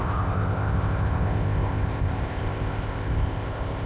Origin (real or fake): fake